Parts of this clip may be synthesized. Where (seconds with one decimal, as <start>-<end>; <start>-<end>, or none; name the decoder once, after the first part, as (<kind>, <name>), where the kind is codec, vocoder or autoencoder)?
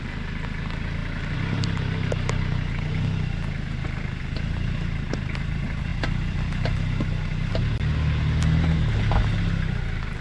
none